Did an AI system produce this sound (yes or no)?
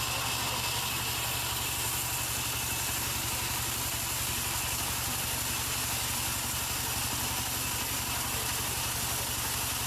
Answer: no